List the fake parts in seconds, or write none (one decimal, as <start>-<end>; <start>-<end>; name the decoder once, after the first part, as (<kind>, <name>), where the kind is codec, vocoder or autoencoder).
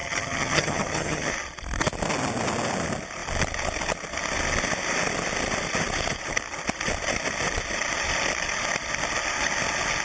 0.0-1.3 (vocoder, HiFi-GAN)